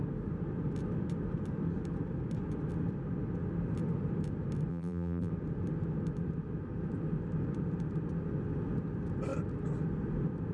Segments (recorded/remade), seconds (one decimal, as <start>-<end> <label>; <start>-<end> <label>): 0.0-4.7 recorded; 4.7-5.3 remade; 5.3-10.5 recorded